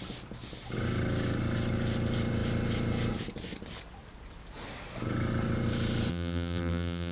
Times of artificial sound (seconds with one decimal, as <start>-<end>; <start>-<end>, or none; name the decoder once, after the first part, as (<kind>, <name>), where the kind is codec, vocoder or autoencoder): 6.1-7.1 (vocoder, BigVGAN v2)